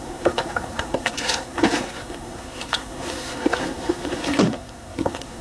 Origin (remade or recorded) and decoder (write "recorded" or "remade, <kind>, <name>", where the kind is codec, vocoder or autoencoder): remade, codec, SNAC